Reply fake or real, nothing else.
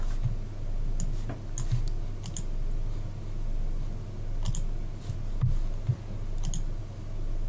real